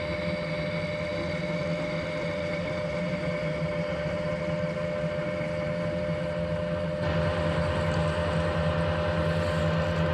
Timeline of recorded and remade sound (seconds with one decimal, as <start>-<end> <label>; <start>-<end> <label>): 0.0-1.1 recorded; 1.1-4.3 remade; 4.3-10.1 recorded